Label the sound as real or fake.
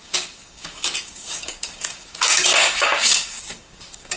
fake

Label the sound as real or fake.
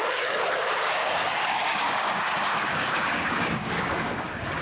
fake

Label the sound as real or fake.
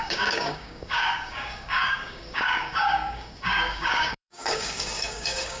fake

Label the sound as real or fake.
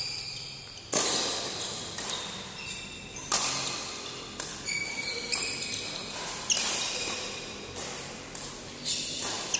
real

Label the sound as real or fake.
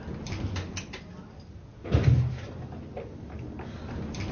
real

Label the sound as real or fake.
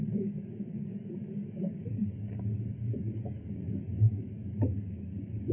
fake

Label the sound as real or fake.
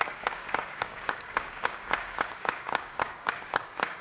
fake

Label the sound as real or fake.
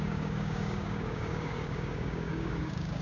fake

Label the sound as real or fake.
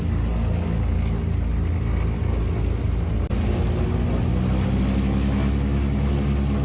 real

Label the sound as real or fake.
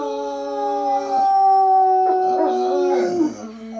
real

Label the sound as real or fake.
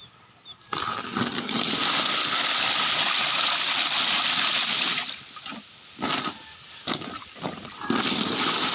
real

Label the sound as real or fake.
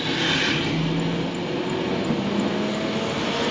real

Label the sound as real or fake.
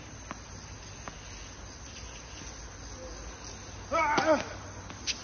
real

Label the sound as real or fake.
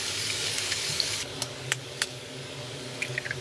fake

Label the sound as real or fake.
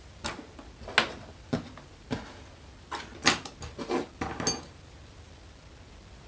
real